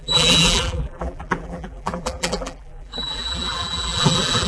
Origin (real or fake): fake